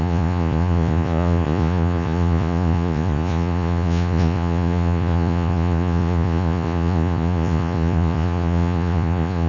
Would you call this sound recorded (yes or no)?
no